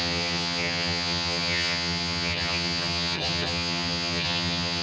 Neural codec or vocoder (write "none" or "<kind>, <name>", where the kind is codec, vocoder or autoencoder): vocoder, HiFi-GAN